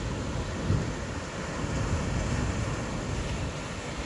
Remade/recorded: recorded